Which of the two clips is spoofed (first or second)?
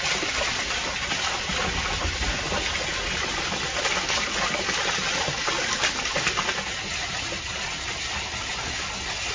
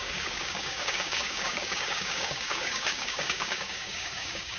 second